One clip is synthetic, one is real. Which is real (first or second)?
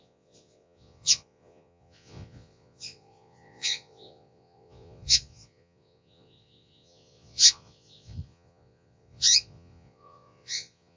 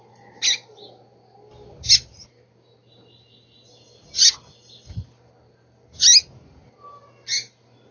second